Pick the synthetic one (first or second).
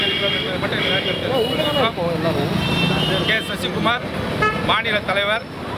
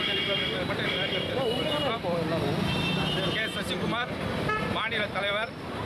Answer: second